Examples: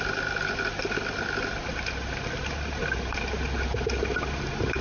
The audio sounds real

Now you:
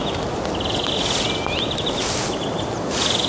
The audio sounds real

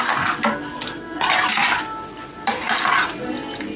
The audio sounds real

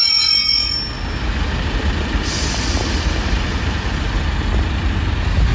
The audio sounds real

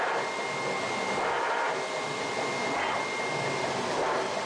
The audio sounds real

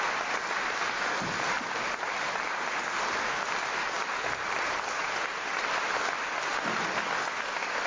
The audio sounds real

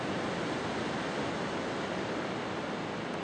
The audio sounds real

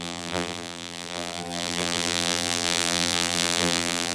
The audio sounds fake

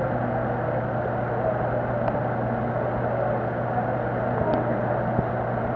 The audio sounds real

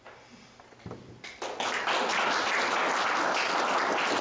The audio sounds real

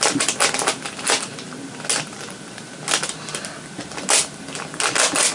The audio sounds real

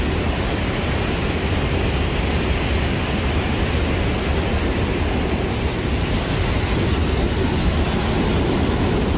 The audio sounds real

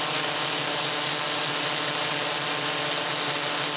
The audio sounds real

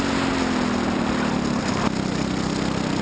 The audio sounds real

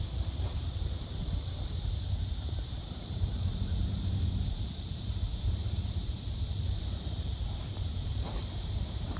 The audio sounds fake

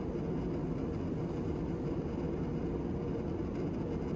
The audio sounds real